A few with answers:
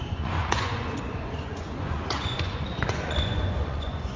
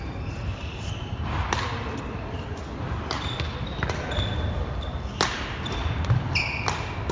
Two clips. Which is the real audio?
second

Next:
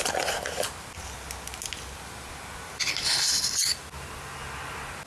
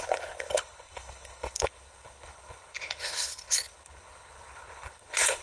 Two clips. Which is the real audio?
first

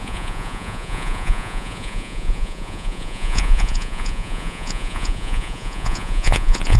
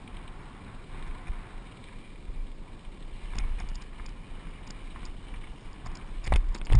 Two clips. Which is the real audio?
second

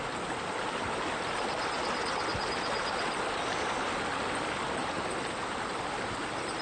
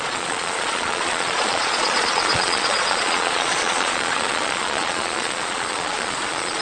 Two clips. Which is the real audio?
first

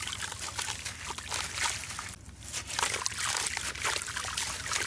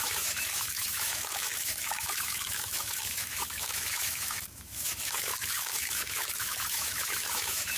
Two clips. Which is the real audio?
first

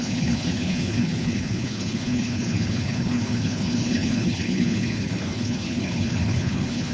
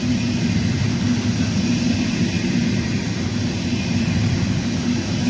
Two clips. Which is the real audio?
second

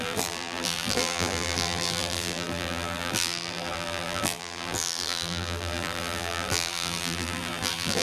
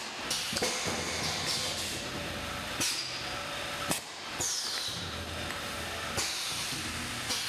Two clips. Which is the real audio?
second